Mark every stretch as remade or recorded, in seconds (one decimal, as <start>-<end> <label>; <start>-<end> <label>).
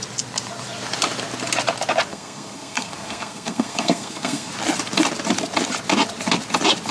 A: 0.0-2.1 recorded; 2.1-4.5 remade; 4.5-6.9 recorded